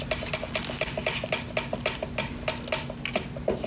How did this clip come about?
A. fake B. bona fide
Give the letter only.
B